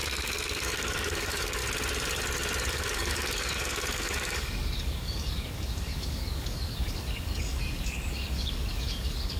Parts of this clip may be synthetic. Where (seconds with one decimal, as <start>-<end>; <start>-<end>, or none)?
0.0-1.6; 2.7-9.4